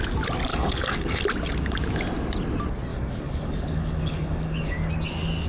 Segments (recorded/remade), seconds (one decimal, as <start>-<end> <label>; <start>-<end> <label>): 0.0-0.5 recorded; 0.5-1.2 remade; 1.2-2.9 recorded; 2.9-4.9 remade; 4.9-5.5 recorded